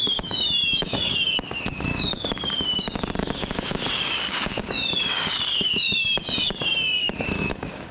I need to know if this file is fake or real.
fake